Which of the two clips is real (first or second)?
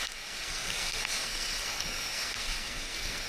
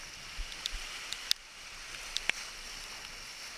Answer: second